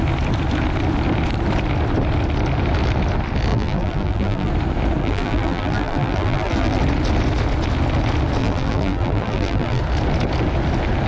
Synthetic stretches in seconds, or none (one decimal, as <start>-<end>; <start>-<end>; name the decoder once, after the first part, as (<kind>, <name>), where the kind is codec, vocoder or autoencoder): 3.5-4.5 (vocoder, BigVGAN v2); 5.0-6.8; 8.4-9.8